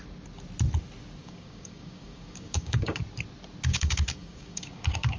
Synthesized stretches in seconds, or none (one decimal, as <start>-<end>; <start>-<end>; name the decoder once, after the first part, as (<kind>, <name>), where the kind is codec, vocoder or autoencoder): 1.2-3.0 (codec, DAC); 3.7-5.2